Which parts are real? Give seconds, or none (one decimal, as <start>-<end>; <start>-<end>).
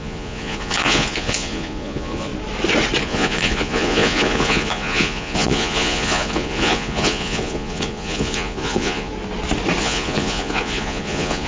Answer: 2.3-3.0; 9.1-9.8